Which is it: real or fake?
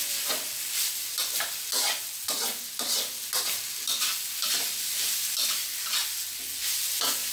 real